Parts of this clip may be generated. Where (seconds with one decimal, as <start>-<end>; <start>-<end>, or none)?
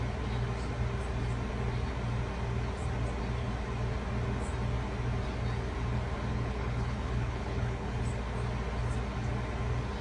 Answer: 6.3-8.0